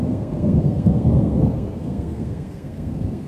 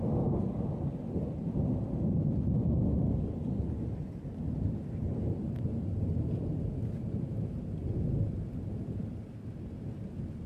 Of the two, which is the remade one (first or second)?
first